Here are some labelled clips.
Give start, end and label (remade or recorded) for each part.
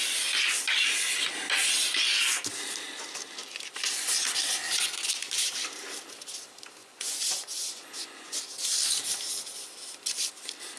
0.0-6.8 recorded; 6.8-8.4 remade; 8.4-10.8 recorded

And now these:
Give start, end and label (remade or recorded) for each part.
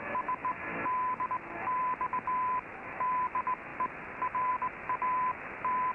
0.0-5.9 recorded